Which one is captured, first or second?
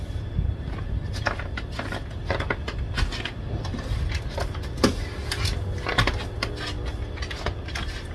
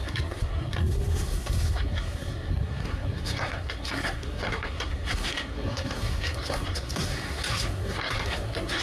first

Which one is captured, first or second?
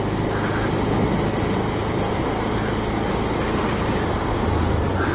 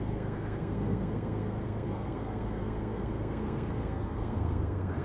first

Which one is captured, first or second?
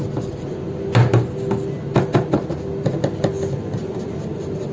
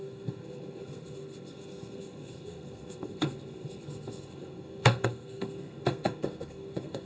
first